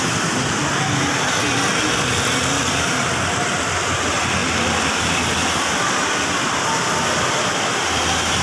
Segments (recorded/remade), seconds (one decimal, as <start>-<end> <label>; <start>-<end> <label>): 0.0-8.4 recorded